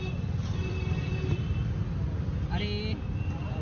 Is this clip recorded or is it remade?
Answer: recorded